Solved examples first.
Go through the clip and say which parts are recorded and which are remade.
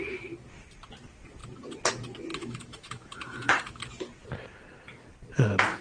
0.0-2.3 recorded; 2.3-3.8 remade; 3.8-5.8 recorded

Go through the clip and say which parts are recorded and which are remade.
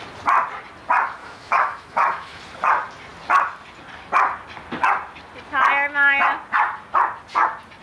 0.0-1.2 recorded; 1.2-2.4 remade; 2.4-7.8 recorded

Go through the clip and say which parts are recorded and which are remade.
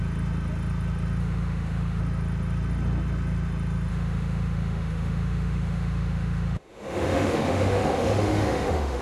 0.0-1.2 recorded; 1.2-2.0 remade; 2.0-3.9 recorded; 3.9-9.0 remade